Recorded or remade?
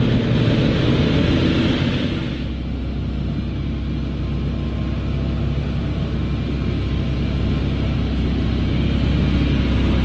recorded